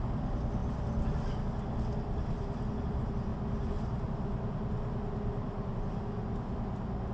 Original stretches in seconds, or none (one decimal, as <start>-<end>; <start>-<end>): 0.0-7.1